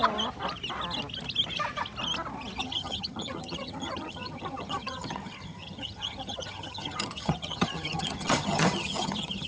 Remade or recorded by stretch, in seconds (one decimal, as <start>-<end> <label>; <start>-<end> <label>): 0.0-2.6 recorded; 2.6-9.5 remade